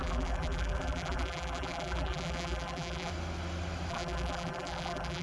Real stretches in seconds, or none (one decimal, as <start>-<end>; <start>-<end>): 3.1-3.9